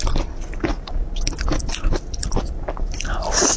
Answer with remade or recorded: recorded